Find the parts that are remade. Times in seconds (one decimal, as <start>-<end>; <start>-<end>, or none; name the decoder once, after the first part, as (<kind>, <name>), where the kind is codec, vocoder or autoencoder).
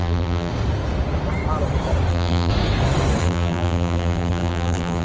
0.0-0.5 (vocoder, BigVGAN v2); 2.1-2.5; 3.2-5.0